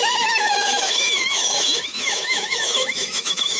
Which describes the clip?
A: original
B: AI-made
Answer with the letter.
B